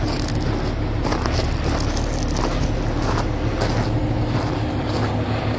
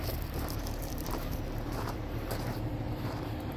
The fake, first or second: second